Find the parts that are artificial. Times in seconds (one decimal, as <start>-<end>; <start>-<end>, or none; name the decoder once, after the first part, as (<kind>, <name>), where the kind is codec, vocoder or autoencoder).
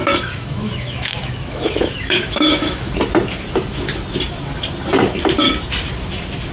0.0-2.9 (autoencoder, DAC-VAE)